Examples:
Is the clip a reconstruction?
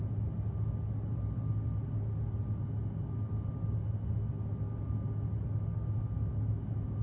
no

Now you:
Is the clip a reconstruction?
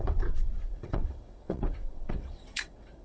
yes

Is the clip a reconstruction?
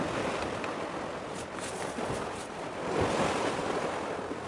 yes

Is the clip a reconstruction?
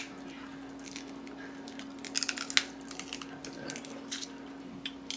no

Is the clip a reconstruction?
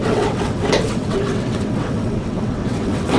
yes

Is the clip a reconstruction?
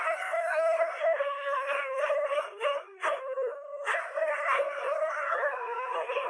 yes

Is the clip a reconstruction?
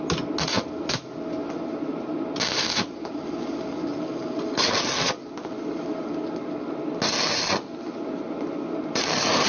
no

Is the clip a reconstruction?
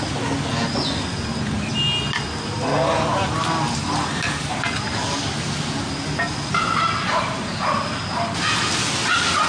no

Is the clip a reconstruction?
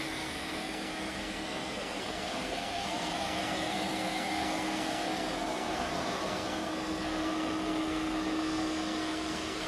yes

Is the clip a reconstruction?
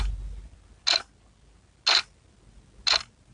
no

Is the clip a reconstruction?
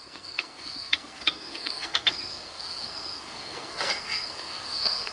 yes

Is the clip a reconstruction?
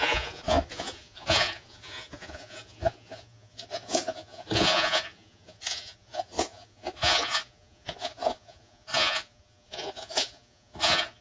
yes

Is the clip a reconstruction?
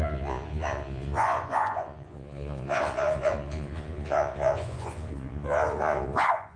yes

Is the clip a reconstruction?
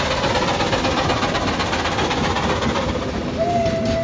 no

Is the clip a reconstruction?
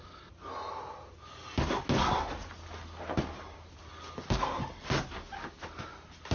no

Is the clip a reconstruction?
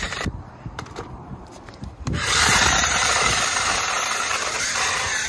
yes